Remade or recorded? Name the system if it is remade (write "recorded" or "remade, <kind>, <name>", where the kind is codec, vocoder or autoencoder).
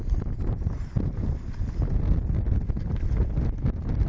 recorded